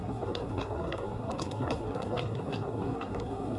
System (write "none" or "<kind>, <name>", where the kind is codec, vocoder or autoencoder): codec, SNAC